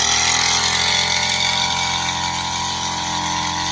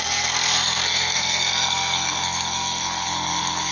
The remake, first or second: second